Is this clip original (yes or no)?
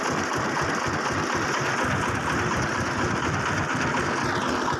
yes